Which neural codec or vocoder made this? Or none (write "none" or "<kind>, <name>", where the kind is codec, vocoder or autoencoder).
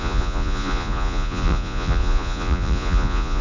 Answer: vocoder, Vocos